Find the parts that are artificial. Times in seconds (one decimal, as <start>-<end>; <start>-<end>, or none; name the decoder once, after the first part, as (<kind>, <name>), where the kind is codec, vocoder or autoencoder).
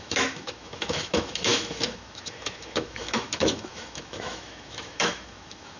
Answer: 0.0-5.8 (autoencoder, DAC-VAE)